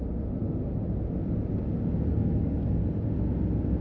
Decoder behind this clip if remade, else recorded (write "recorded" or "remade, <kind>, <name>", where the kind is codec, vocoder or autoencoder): recorded